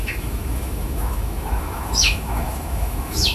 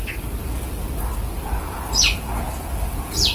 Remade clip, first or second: first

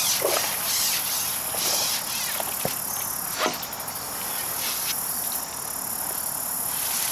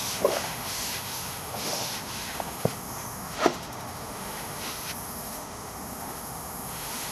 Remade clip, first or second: second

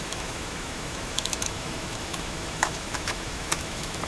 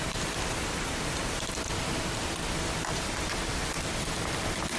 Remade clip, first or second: first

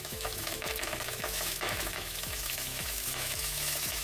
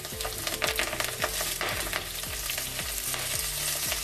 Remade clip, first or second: first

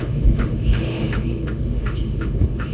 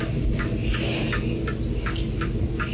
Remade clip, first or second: first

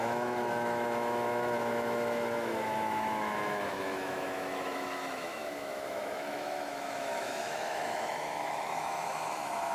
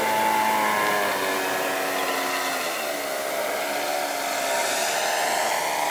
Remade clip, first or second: first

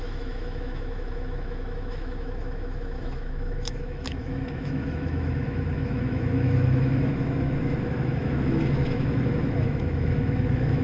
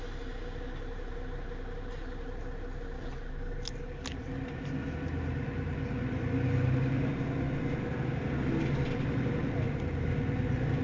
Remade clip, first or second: first